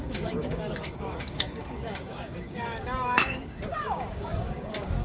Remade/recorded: remade